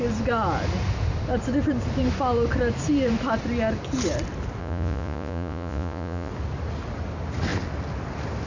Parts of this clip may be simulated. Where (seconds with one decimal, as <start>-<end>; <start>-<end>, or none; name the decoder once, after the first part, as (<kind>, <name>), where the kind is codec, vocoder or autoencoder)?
4.6-6.3 (vocoder, Vocos)